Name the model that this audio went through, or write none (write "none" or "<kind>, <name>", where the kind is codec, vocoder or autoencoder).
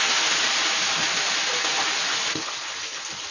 none